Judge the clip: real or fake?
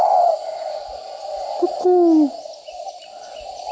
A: real